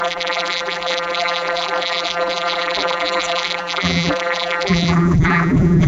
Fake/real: fake